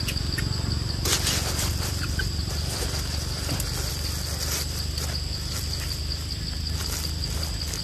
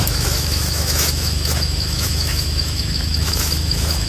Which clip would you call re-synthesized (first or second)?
second